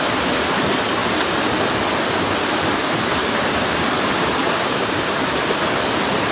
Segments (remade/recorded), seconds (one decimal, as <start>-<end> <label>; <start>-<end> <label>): 0.0-3.2 recorded; 3.2-3.8 remade; 3.8-4.4 recorded; 4.4-4.9 remade; 4.9-6.3 recorded